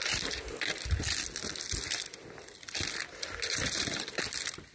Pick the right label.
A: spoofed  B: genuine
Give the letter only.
B